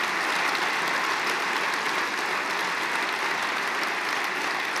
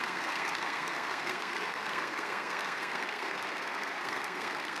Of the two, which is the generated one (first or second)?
second